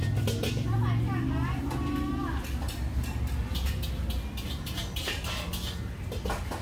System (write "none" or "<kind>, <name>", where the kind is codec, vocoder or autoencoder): none